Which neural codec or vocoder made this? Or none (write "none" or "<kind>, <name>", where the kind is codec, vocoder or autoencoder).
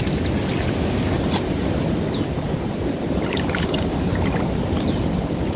none